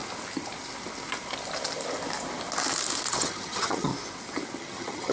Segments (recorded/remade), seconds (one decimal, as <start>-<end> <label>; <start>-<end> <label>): 0.0-3.1 recorded; 3.1-3.9 remade; 3.9-4.6 recorded; 4.6-5.1 remade